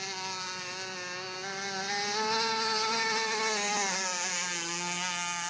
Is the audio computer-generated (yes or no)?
no